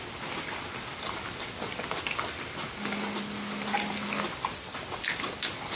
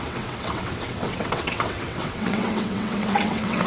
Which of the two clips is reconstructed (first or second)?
second